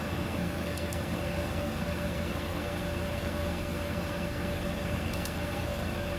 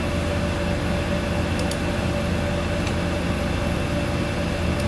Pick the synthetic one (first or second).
first